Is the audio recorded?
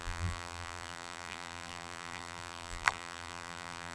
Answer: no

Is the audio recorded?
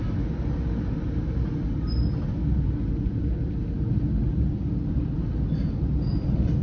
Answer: yes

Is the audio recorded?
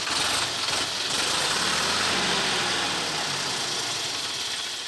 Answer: yes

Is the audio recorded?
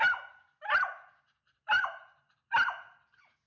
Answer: yes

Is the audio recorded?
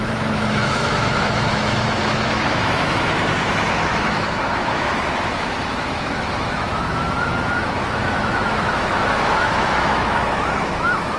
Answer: no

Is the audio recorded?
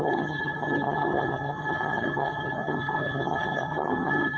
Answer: no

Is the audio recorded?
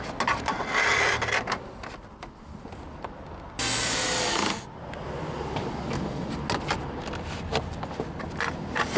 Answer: yes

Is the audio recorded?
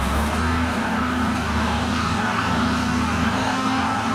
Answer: no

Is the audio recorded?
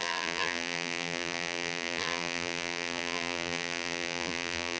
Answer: no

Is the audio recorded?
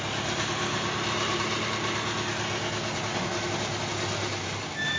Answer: yes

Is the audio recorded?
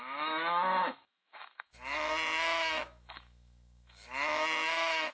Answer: no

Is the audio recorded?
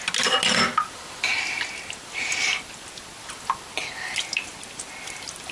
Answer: yes